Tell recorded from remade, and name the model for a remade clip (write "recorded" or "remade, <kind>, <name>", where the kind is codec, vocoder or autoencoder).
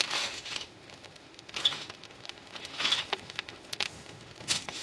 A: remade, autoencoder, DAC-VAE